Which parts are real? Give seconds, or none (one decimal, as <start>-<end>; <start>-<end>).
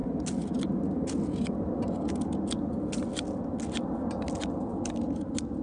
0.0-5.6